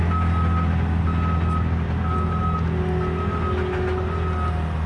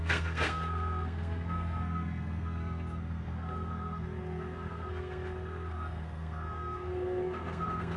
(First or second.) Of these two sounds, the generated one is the second